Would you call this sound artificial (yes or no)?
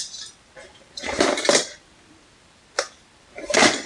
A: yes